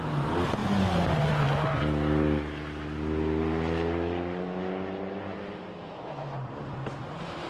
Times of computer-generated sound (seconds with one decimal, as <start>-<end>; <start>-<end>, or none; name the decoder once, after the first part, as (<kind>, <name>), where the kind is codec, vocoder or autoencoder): none

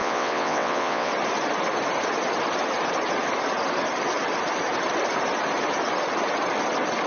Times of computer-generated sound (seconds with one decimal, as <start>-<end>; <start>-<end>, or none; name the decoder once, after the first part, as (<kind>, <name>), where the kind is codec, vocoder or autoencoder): 0.0-1.1 (vocoder, WaveNeXt)